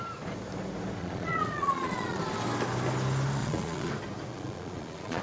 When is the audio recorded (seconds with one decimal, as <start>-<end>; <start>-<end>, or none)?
0.0-1.0; 2.2-3.4; 3.9-4.3